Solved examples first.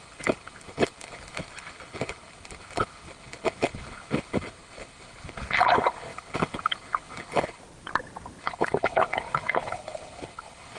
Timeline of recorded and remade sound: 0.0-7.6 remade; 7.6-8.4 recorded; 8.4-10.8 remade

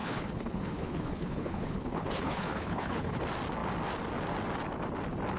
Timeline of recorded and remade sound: 0.0-3.2 remade; 3.2-5.4 recorded